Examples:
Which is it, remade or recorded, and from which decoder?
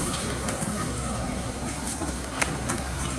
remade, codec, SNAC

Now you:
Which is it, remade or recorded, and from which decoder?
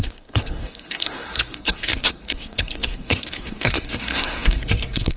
remade, codec, SNAC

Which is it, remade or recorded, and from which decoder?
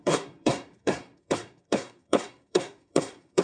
remade, codec, SNAC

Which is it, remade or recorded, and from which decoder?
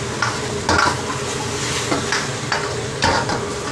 recorded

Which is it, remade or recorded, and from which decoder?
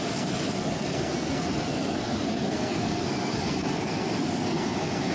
remade, codec, SNAC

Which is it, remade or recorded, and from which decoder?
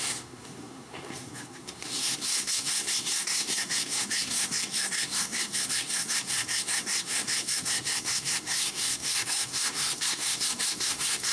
remade, codec, SNAC